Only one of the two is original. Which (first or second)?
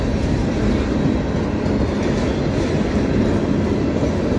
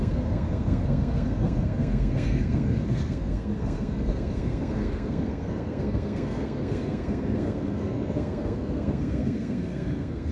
first